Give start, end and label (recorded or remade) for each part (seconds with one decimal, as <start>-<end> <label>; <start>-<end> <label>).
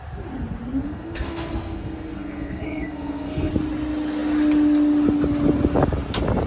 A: 0.0-0.8 recorded; 0.8-3.5 remade; 3.5-6.5 recorded